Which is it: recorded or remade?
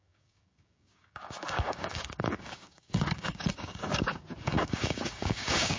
remade